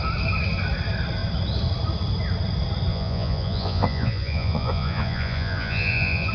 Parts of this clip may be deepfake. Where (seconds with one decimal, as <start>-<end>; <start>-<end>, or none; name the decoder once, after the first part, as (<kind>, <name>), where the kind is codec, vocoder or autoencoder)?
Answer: 2.9-6.3 (vocoder, Vocos)